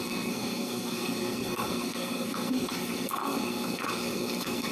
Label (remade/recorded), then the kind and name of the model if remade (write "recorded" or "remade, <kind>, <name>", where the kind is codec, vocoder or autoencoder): remade, codec, SNAC